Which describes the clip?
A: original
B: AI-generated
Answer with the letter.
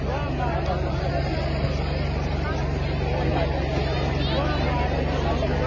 A